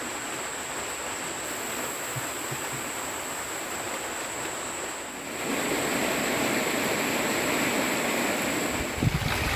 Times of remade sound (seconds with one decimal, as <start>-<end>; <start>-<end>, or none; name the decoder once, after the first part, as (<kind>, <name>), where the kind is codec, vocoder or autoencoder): none